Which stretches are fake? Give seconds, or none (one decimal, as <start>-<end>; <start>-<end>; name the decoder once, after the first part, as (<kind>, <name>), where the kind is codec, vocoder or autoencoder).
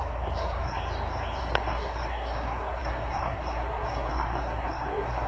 0.0-0.8 (codec, SNAC); 1.4-5.3